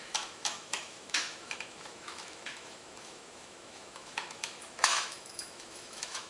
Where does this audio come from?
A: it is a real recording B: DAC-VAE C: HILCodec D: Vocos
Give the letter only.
B